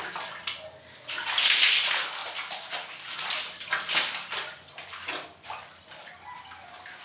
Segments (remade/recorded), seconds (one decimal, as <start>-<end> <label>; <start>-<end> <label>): 0.0-7.0 recorded